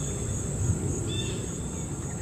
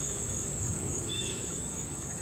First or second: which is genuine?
first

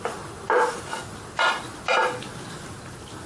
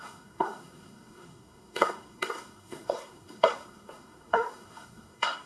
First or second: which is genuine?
first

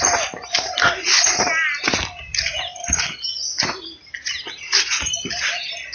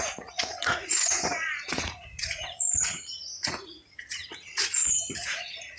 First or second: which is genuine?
first